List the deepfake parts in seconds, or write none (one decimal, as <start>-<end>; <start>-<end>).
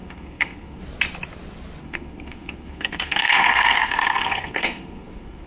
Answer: 0.0-0.8; 1.8-5.5